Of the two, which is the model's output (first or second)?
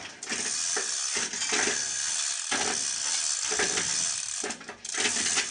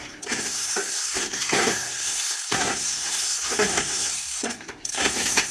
second